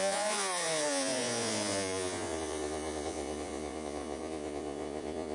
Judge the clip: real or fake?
fake